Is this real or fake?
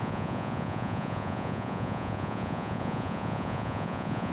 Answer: fake